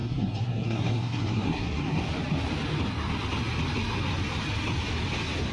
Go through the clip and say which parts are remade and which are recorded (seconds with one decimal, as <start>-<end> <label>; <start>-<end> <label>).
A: 0.0-2.0 remade; 2.0-5.5 recorded